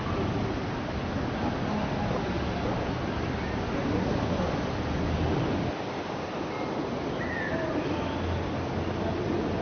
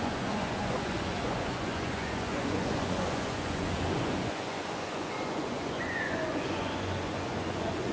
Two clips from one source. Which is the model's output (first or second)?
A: second